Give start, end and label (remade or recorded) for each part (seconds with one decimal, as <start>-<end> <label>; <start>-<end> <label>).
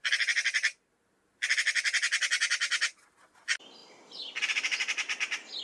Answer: 0.0-5.6 recorded